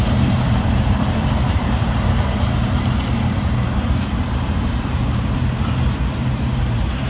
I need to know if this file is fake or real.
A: fake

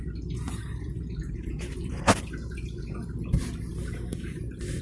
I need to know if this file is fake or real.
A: fake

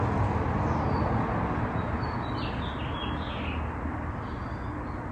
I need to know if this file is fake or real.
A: real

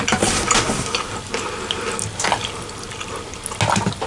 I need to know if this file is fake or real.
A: real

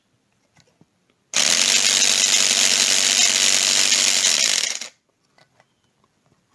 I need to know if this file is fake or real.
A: fake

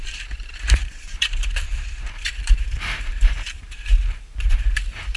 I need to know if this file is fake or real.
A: fake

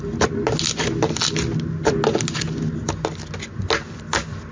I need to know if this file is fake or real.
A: real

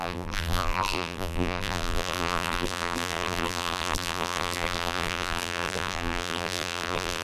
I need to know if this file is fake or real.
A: fake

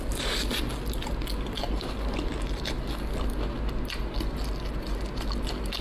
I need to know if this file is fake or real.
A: real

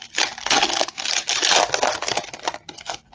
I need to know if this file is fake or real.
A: real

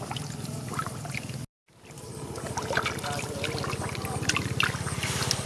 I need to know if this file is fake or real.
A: real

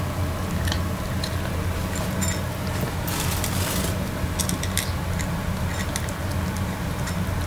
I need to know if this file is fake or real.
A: real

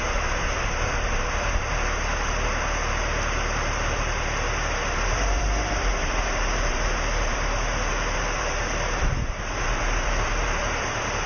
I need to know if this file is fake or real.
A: fake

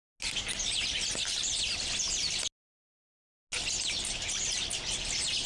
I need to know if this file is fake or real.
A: real